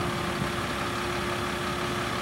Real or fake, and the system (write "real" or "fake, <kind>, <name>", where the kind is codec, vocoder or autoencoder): real